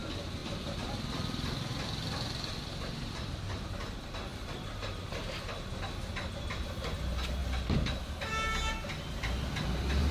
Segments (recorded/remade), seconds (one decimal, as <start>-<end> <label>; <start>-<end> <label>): 0.0-0.4 recorded; 0.4-3.7 remade; 3.7-4.3 recorded; 4.3-5.0 remade; 5.0-10.1 recorded